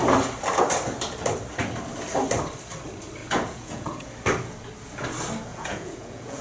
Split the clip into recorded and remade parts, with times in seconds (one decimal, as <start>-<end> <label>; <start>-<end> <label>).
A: 0.0-3.2 recorded; 3.2-4.1 remade; 4.1-5.5 recorded; 5.5-6.4 remade